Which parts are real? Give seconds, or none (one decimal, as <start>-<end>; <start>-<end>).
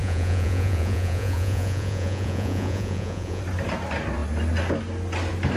3.4-5.6